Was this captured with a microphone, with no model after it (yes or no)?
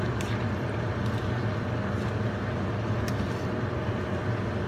yes